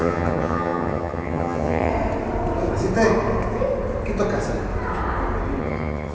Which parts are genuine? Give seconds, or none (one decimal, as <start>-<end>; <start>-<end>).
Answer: 1.9-5.6